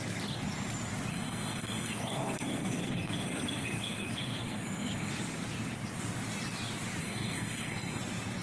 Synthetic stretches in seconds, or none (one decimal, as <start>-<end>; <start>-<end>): 1.1-5.1; 7.0-8.0